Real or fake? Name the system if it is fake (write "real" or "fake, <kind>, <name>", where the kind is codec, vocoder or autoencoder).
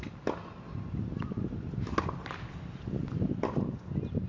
real